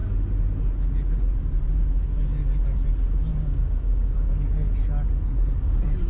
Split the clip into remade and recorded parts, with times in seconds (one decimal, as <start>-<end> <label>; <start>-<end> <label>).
0.0-3.3 recorded; 3.3-4.3 remade; 4.3-6.1 recorded